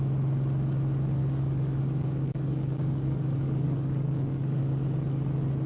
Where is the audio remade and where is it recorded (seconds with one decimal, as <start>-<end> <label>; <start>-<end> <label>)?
0.0-1.2 recorded; 1.2-4.6 remade; 4.6-5.7 recorded